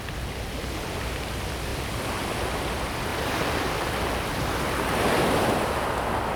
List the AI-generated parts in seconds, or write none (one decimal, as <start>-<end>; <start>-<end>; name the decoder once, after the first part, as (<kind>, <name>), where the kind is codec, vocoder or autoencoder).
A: 3.1-3.9 (vocoder, BigVGAN v2)